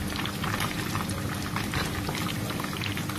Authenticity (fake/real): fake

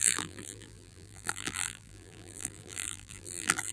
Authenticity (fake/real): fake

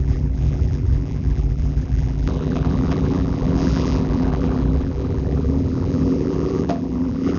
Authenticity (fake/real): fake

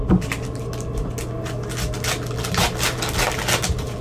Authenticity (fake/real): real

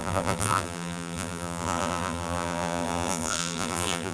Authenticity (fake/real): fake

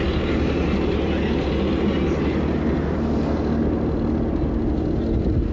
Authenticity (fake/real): real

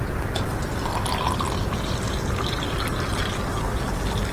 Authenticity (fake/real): real